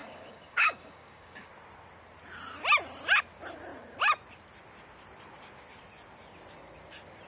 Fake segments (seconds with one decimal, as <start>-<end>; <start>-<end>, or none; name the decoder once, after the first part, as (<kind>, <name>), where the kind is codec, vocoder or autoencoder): 0.0-1.5 (codec, DAC)